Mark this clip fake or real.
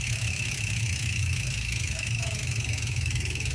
fake